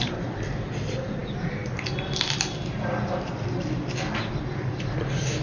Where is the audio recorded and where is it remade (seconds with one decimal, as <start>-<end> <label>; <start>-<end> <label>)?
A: 0.0-5.4 recorded